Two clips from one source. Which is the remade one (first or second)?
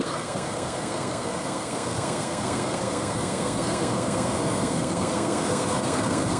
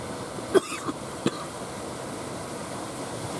first